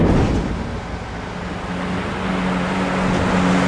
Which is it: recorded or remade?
recorded